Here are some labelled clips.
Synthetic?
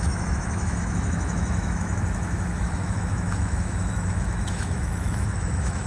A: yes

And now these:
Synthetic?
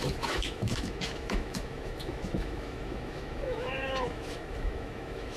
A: yes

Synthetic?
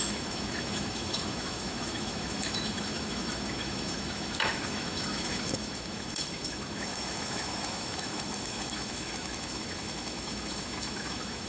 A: yes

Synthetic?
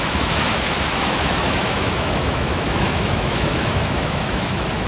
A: yes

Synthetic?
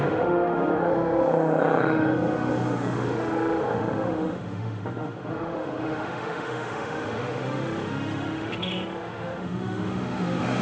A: yes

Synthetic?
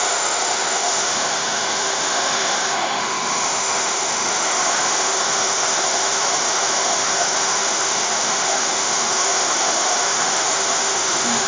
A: yes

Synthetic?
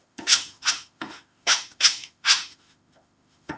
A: yes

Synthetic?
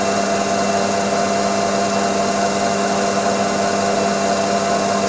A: no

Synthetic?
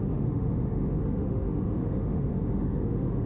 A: yes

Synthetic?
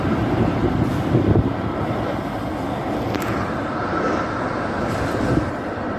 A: no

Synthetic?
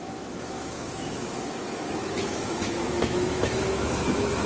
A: yes